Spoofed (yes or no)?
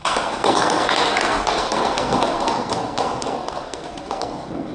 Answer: yes